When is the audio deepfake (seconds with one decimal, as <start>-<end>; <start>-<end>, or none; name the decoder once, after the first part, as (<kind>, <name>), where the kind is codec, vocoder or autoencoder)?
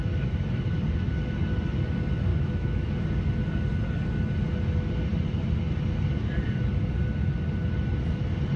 2.3-2.9 (autoencoder, DAC-VAE)